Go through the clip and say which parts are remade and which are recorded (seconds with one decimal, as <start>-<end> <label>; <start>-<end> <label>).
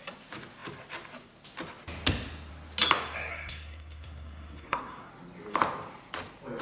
0.0-3.3 recorded; 3.3-5.1 remade; 5.1-6.6 recorded